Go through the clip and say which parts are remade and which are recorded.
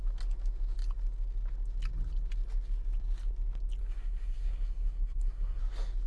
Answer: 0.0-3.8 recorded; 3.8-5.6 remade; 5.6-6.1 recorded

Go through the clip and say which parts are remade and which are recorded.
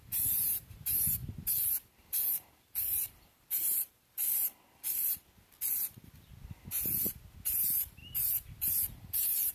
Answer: 0.0-1.2 remade; 1.2-1.7 recorded; 1.7-4.2 remade; 4.2-7.6 recorded; 7.6-8.0 remade; 8.0-8.6 recorded; 8.6-9.5 remade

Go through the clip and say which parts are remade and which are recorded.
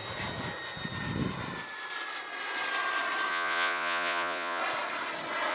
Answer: 0.0-3.3 recorded; 3.3-4.6 remade; 4.6-5.5 recorded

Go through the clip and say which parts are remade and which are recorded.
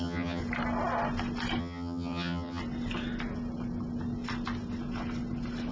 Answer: 0.0-0.4 remade; 0.4-1.6 recorded; 1.6-2.6 remade; 2.6-5.7 recorded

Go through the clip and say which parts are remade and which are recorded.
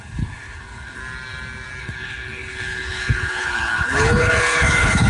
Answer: 0.0-1.0 remade; 1.0-1.8 recorded; 1.8-5.1 remade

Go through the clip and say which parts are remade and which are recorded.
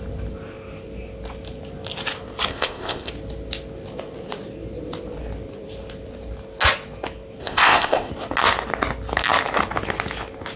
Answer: 0.0-2.5 recorded; 2.5-3.1 remade; 3.1-7.4 recorded; 7.4-8.1 remade; 8.1-10.6 recorded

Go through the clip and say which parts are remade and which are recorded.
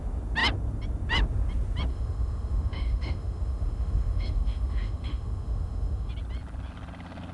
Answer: 0.0-1.9 recorded; 1.9-6.1 remade; 6.1-7.3 recorded